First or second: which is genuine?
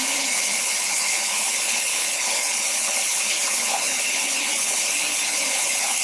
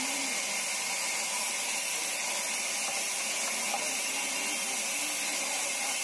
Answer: second